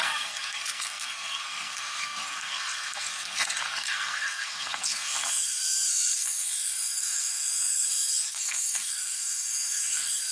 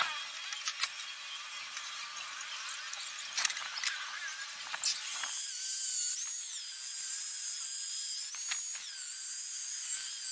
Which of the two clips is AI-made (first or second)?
first